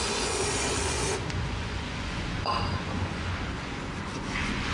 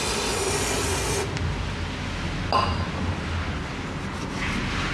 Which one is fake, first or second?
first